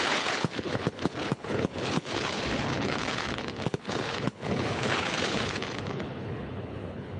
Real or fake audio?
fake